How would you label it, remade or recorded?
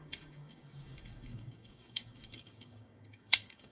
remade